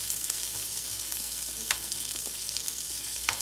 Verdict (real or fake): fake